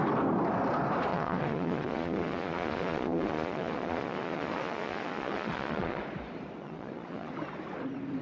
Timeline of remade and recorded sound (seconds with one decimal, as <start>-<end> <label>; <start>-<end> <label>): 0.0-1.1 recorded; 1.1-6.0 remade; 6.0-6.6 recorded; 6.6-7.3 remade; 7.3-8.2 recorded